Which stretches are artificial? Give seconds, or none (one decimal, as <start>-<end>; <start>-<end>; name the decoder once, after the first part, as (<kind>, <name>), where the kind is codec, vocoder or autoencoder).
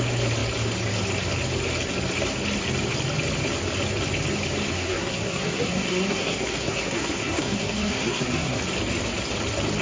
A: 4.7-8.6 (codec, SNAC)